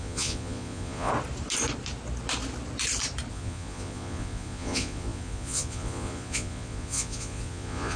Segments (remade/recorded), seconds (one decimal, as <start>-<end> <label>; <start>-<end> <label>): 0.0-1.1 remade; 1.1-3.3 recorded; 3.3-8.0 remade